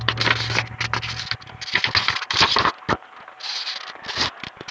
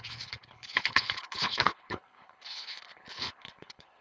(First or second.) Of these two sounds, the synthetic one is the second